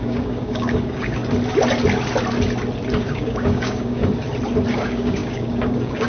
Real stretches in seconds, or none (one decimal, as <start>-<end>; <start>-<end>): 1.2-3.0; 4.0-4.7